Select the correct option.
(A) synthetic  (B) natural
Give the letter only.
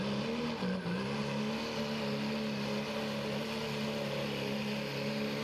B